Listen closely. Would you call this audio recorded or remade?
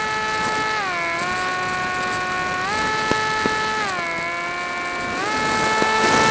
recorded